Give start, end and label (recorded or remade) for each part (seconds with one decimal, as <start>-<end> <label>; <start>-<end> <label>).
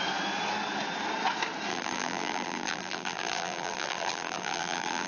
0.0-1.7 recorded; 1.7-5.1 remade